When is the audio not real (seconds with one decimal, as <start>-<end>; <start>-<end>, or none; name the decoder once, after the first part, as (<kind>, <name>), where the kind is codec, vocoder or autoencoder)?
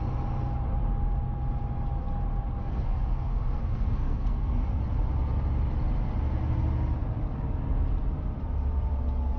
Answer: 2.6-4.8 (codec, SNAC)